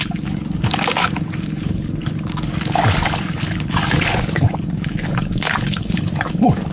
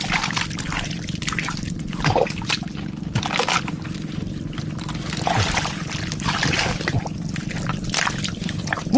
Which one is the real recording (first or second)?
second